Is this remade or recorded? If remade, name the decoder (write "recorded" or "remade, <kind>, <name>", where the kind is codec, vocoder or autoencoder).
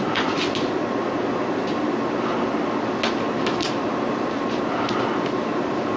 recorded